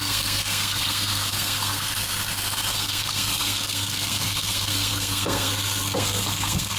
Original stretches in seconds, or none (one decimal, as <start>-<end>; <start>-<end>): none